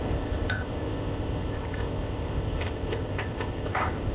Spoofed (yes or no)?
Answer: yes